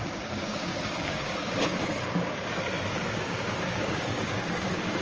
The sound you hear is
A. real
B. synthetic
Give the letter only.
B